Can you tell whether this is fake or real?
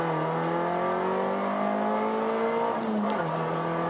real